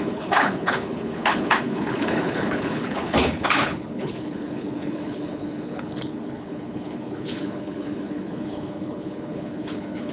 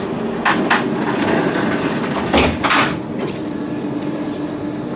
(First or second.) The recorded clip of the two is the second